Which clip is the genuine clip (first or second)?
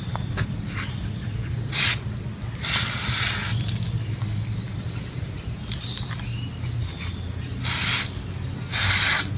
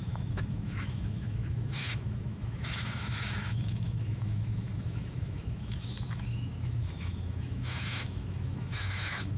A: first